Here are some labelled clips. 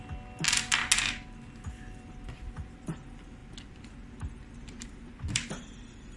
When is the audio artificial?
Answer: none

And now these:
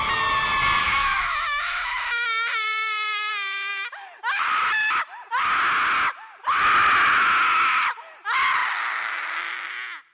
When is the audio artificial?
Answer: 0.8-3.3 (autoencoder, DAC-VAE)

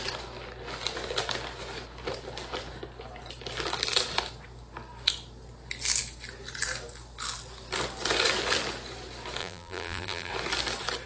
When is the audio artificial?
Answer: 9.4-10.3 (vocoder, BigVGAN v2)

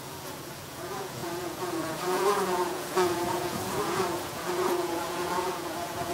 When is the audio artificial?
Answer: 0.0-6.1 (vocoder, Vocos)

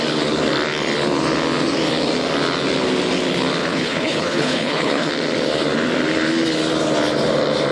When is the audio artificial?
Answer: 3.6-5.1 (codec, HILCodec)